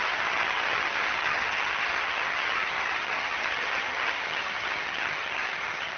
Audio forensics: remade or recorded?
remade